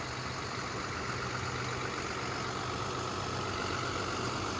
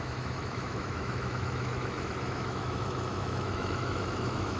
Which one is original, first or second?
first